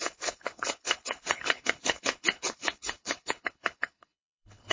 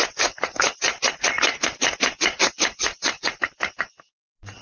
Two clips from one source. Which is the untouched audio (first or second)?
second